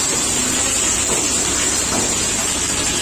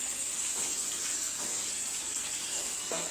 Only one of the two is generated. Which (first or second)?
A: second